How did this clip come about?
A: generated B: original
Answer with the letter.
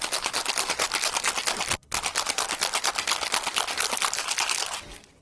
B